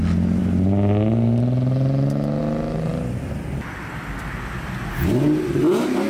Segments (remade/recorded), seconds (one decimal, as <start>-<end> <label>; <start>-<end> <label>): 0.0-6.1 recorded